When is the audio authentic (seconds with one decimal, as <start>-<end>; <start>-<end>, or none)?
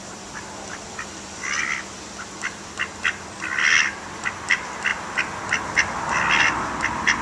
4.9-6.4